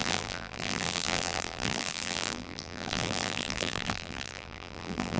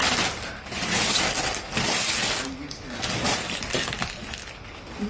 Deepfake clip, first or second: first